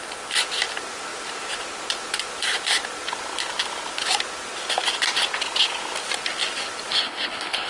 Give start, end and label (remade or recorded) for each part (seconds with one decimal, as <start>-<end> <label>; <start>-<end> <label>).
0.0-6.9 recorded; 6.9-7.7 remade